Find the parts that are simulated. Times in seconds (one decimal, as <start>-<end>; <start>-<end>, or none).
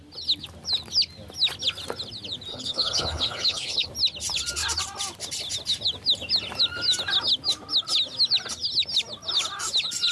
2.5-3.9